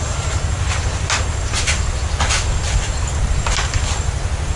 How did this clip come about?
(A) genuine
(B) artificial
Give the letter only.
A